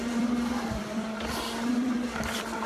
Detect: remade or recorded remade